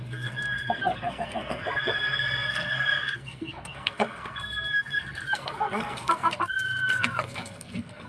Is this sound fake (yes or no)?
yes